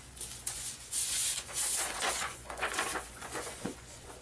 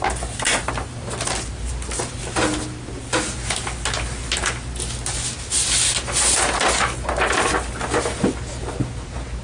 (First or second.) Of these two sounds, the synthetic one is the first